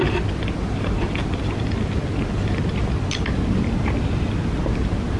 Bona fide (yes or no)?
yes